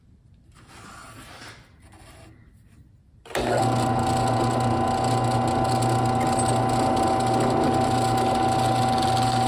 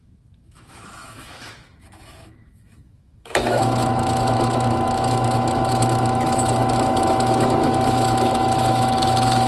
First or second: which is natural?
first